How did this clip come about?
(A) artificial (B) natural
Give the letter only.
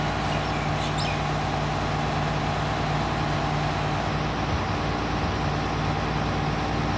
B